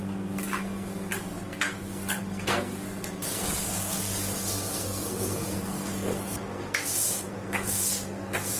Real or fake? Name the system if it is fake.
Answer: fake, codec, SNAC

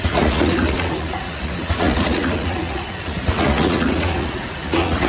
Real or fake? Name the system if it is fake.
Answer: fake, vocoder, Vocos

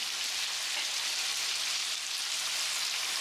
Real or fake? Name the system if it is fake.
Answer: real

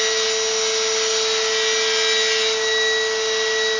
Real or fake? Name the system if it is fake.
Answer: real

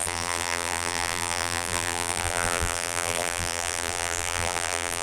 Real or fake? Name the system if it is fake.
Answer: fake, vocoder, BigVGAN v2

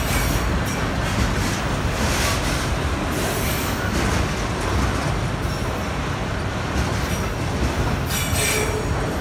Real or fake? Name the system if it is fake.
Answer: real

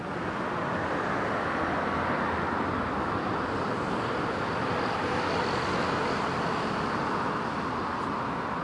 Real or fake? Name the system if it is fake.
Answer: real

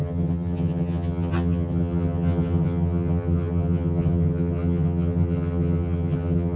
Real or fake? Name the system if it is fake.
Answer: fake, vocoder, HiFi-GAN